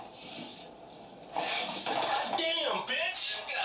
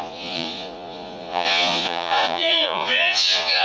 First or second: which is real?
first